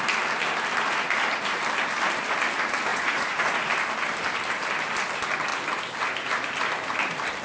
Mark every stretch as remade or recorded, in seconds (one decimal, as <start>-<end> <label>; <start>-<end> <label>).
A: 0.0-2.9 recorded; 2.9-3.7 remade; 3.7-7.4 recorded